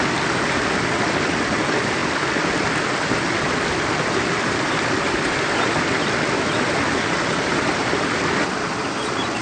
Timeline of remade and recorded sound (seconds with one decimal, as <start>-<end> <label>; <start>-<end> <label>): 0.0-9.4 recorded